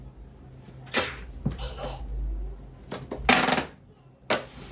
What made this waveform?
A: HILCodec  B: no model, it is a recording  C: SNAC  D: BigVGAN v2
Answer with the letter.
B